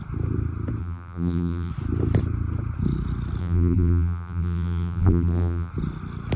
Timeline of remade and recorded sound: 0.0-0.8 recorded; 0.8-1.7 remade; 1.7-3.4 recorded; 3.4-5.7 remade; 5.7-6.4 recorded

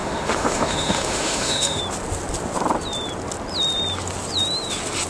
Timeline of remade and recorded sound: 0.0-1.8 remade; 1.8-5.1 recorded

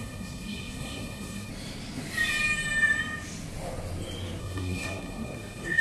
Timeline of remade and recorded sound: 0.0-1.5 remade; 1.5-4.4 recorded; 4.4-5.8 remade

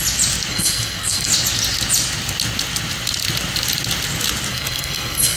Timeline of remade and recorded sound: 0.0-0.5 recorded; 0.5-1.3 remade; 1.3-4.5 recorded; 4.5-5.4 remade

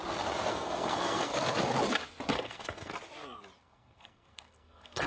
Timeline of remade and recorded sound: 0.0-0.5 recorded; 0.5-1.3 remade; 1.3-2.3 recorded; 2.3-2.9 remade; 2.9-3.6 recorded; 3.6-5.1 remade

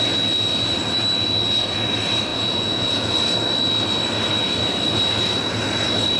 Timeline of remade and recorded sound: 0.0-2.3 recorded; 2.3-3.1 remade; 3.1-6.2 recorded

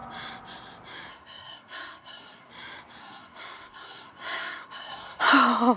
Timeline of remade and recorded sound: 0.0-1.1 recorded; 1.1-2.5 remade; 2.5-3.0 recorded; 3.0-5.2 remade; 5.2-5.8 recorded